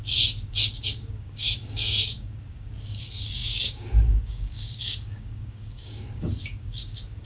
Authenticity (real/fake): fake